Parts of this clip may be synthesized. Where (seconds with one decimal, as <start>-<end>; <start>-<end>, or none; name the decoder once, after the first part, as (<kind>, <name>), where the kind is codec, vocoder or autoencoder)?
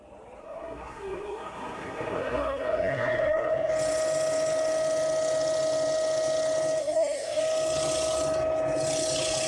0.4-3.7 (codec, SNAC); 6.8-7.4